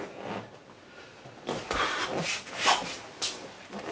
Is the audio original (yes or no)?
yes